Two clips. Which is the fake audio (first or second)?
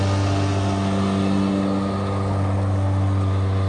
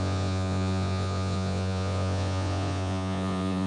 second